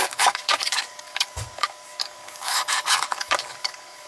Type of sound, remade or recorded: remade